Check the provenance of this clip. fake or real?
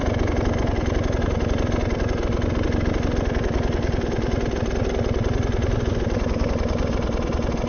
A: real